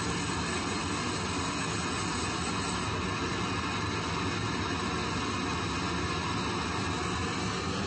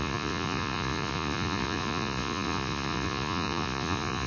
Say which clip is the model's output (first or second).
second